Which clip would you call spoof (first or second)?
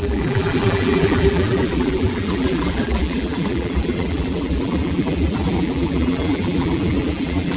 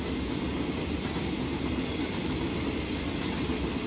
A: first